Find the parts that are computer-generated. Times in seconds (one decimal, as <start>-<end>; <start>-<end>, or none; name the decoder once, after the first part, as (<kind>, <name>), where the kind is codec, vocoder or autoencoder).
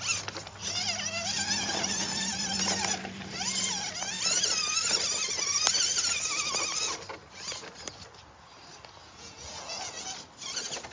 9.0-10.1 (vocoder, Vocos)